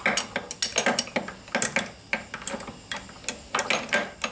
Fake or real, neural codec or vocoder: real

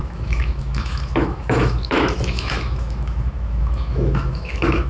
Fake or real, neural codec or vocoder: fake, autoencoder, DAC-VAE